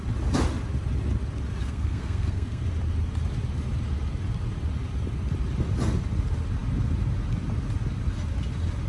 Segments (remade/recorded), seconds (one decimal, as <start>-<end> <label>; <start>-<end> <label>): 0.0-1.6 recorded; 1.6-2.6 remade; 2.6-8.9 recorded